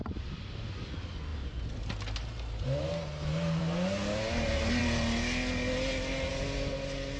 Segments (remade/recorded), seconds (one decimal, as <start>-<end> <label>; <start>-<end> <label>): 0.0-7.2 recorded